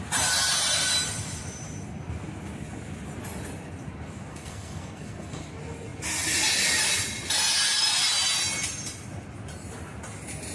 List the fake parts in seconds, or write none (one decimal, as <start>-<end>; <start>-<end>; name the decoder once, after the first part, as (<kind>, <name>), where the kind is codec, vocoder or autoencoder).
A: 4.3-5.4 (codec, SNAC)